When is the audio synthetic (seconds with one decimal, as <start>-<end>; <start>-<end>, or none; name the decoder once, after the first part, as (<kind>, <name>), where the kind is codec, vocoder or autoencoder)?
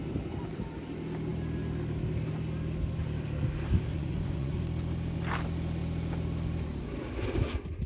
3.9-4.6 (vocoder, Vocos)